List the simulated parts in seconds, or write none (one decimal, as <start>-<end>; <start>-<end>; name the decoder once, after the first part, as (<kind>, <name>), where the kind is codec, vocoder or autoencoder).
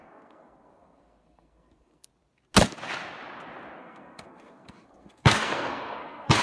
0.0-2.1 (codec, SNAC); 3.8-6.4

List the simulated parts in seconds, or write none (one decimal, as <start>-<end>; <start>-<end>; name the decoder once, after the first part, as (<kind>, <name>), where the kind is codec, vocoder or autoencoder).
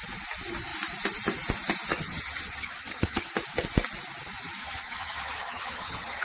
1.9-3.3 (vocoder, HiFi-GAN); 4.6-6.2